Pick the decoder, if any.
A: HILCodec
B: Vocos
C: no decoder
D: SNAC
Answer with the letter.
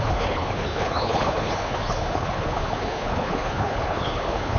A